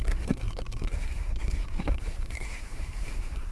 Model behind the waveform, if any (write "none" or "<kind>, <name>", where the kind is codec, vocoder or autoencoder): codec, SNAC